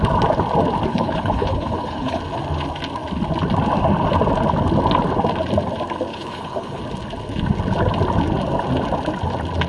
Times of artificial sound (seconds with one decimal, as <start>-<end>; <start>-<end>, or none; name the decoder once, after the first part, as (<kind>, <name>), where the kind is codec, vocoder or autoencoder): 0.9-2.2 (codec, HILCodec); 6.1-6.8